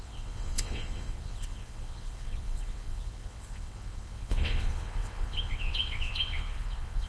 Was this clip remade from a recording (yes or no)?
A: yes